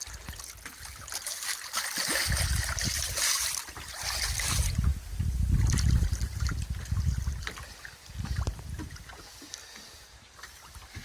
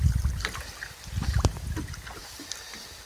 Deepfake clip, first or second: first